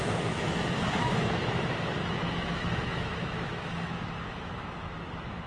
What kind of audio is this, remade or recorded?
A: remade